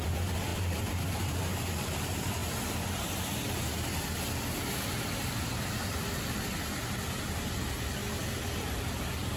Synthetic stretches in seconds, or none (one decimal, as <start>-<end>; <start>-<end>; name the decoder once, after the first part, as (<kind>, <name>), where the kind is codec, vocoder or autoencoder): 0.0-2.4 (vocoder, BigVGAN v2); 6.6-8.0; 8.6-9.4